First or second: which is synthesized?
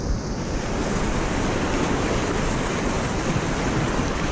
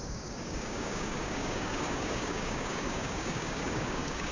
second